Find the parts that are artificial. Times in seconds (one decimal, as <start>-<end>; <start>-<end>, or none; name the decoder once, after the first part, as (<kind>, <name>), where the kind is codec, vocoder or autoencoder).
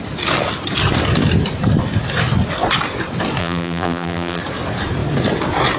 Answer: 3.4-4.4 (vocoder, BigVGAN v2)